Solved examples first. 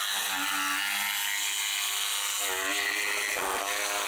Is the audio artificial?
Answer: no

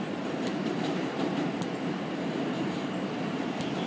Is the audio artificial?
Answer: yes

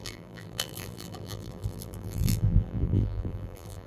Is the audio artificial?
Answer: yes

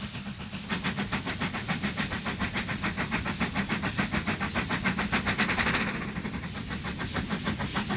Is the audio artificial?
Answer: no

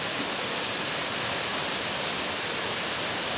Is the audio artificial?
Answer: yes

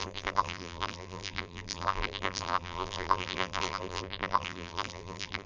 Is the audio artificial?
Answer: yes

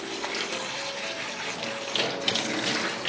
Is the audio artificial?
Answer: no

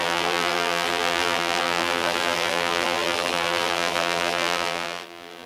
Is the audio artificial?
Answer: yes